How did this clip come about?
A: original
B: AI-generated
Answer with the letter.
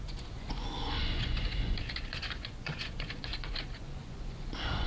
B